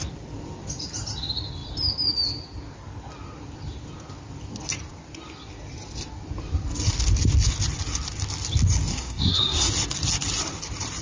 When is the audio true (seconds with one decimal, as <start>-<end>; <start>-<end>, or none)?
0.0-8.9; 9.7-11.0